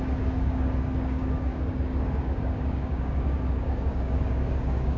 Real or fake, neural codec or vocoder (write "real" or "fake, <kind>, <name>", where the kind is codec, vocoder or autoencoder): fake, codec, DAC